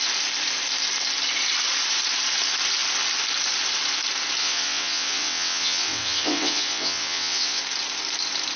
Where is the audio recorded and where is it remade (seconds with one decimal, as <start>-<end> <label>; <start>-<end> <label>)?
0.0-4.4 recorded; 4.4-7.6 remade; 7.6-8.6 recorded